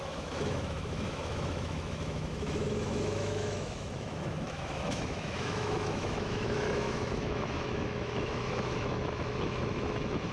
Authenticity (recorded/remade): remade